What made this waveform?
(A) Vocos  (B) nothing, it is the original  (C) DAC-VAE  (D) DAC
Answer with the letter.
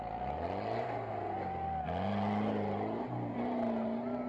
B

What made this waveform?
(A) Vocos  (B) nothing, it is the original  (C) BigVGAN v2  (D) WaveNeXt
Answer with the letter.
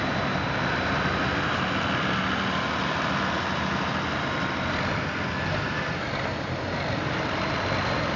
B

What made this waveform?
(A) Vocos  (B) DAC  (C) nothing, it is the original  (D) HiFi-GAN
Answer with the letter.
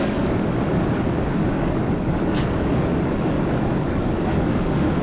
B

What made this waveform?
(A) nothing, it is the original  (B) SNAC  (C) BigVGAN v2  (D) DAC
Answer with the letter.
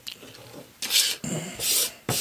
A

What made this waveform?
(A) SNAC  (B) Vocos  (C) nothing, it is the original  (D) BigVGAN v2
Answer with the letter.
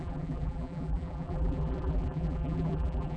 D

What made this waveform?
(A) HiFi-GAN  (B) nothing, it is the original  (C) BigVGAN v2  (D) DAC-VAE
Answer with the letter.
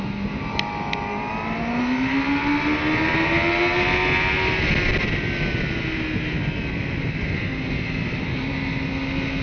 B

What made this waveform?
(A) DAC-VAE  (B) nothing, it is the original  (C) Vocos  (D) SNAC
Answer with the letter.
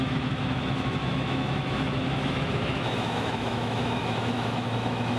A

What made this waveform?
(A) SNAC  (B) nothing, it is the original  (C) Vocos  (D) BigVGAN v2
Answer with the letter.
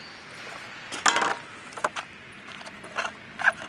B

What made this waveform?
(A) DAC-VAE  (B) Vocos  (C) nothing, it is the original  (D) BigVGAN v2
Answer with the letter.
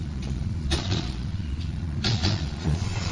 B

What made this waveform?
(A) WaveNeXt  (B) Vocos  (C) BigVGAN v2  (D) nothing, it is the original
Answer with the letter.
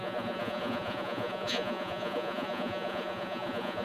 B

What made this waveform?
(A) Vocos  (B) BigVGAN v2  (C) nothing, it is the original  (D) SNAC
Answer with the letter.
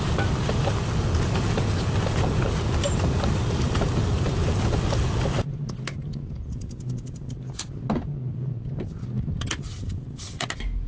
C